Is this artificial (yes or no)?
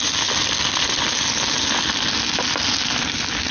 no